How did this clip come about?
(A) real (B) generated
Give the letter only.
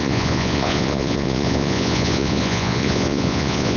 B